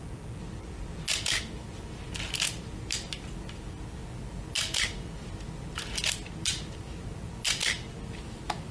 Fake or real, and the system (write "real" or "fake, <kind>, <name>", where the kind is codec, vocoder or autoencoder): real